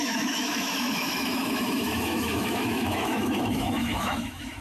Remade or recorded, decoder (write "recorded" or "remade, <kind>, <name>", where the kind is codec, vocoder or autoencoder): remade, autoencoder, DAC-VAE